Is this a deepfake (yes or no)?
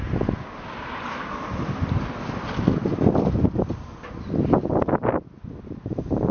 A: no